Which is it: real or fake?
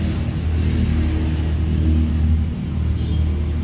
real